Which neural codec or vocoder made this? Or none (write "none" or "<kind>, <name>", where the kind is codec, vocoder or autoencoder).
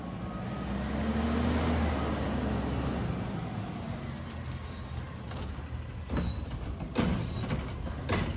none